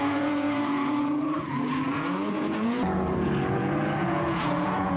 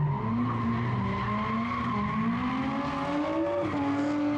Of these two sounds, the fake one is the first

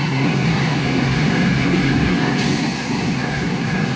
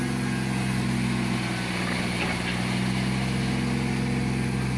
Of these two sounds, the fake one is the first